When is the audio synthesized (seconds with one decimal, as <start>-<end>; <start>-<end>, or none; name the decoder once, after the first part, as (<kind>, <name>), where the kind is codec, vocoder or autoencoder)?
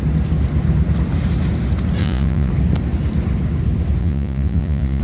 2.0-2.5 (vocoder, Vocos); 4.0-5.0